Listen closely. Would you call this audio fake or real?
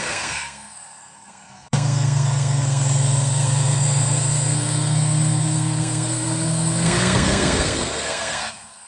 fake